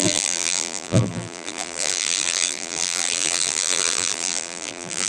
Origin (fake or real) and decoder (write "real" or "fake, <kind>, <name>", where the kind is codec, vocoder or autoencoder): fake, vocoder, BigVGAN v2